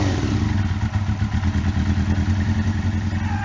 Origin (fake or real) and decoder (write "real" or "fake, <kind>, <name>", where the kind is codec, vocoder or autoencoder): real